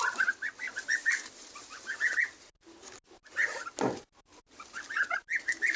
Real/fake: real